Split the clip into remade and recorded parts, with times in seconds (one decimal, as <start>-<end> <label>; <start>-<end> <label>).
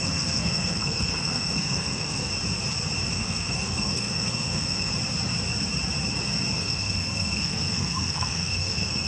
0.0-2.3 remade; 2.3-3.1 recorded; 3.1-4.9 remade; 4.9-6.5 recorded; 6.5-9.1 remade